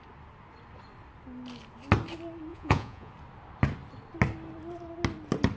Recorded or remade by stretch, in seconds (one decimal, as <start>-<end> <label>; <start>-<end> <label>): 0.0-2.5 recorded; 2.5-3.1 remade; 3.1-5.6 recorded